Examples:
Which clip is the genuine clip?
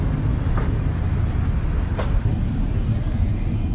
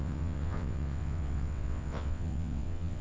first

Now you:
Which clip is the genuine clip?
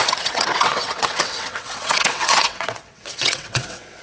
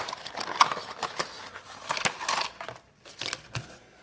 second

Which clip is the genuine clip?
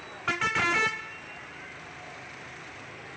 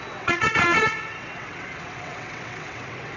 first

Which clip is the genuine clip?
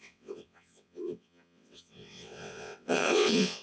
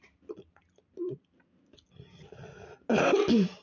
second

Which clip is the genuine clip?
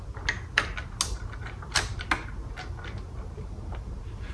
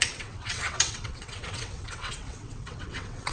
first